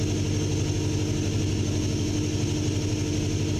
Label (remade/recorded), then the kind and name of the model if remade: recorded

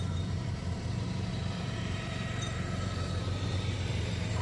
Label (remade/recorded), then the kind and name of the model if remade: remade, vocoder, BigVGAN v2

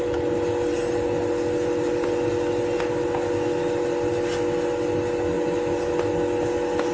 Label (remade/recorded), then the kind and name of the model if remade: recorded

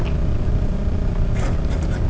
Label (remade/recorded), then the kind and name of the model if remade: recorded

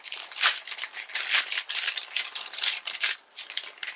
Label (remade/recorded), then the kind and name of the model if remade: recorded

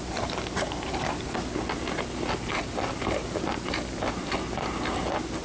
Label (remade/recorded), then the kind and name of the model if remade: recorded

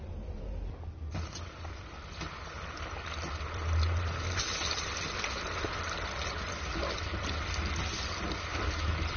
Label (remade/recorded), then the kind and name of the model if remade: recorded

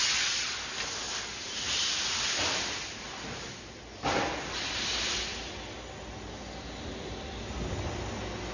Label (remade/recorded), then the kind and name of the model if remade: recorded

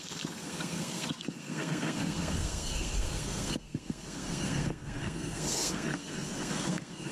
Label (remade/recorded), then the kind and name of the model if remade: remade, codec, SNAC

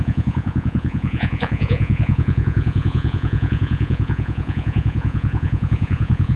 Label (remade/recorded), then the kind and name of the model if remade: remade, vocoder, Vocos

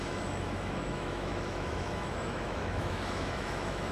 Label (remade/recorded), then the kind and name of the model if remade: remade, autoencoder, DAC-VAE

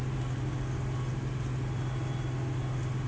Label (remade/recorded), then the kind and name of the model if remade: recorded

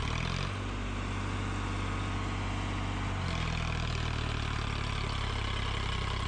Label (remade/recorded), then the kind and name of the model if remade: recorded